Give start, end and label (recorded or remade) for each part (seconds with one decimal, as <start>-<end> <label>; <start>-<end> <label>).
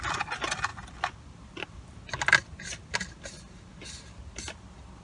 0.0-5.0 recorded